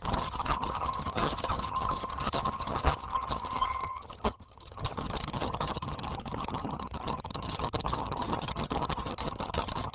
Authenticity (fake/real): fake